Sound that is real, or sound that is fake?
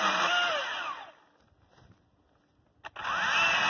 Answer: real